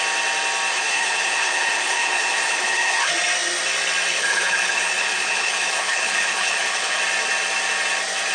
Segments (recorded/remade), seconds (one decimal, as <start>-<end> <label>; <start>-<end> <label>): 0.0-0.7 recorded; 0.7-3.1 remade; 3.1-4.1 recorded; 4.1-7.0 remade; 7.0-8.3 recorded